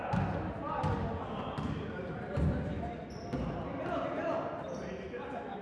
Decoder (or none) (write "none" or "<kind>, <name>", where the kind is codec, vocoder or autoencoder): none